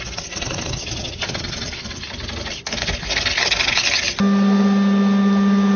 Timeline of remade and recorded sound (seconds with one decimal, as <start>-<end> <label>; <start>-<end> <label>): 0.0-2.0 remade; 2.0-5.8 recorded